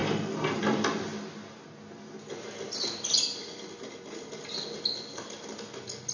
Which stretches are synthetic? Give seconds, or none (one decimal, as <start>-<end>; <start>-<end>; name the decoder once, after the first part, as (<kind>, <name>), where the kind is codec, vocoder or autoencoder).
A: none